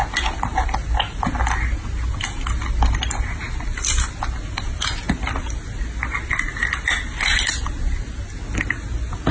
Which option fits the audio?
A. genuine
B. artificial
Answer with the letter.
A